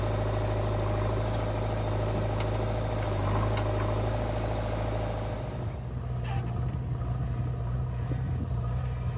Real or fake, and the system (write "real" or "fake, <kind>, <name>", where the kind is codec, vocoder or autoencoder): real